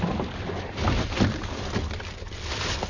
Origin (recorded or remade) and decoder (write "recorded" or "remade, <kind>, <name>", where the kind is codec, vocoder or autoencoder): recorded